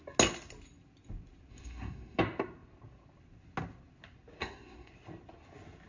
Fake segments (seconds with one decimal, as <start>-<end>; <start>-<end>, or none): 1.5-2.2; 4.4-4.9